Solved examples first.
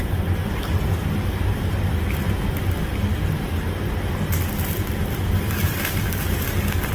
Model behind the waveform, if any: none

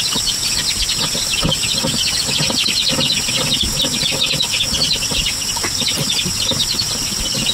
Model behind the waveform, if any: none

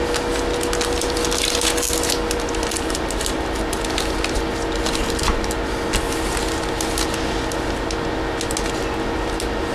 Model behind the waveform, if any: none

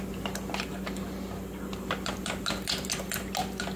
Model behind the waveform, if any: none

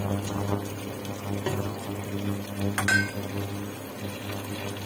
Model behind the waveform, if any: none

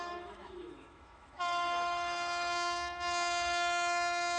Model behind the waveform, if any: autoencoder, DAC-VAE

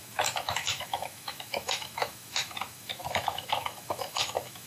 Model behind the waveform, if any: autoencoder, DAC-VAE